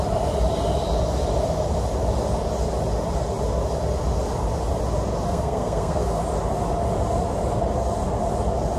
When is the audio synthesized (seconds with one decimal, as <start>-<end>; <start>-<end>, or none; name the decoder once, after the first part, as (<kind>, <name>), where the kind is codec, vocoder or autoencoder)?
5.3-6.2 (codec, SNAC)